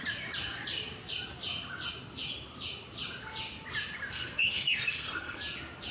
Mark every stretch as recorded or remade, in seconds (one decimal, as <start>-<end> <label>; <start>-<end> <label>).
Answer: 0.0-4.1 recorded; 4.1-5.4 remade; 5.4-5.9 recorded

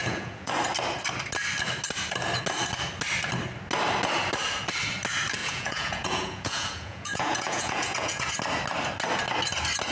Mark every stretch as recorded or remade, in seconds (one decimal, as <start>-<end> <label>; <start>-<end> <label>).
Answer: 0.0-0.5 remade; 0.5-5.4 recorded; 5.4-8.3 remade; 8.3-9.9 recorded

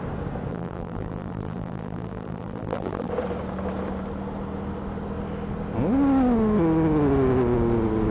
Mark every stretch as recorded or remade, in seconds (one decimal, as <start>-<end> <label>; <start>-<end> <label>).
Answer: 0.0-0.5 recorded; 0.5-3.1 remade; 3.1-8.1 recorded

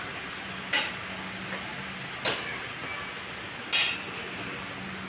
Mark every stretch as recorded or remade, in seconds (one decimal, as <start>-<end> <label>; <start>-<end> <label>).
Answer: 0.0-5.1 recorded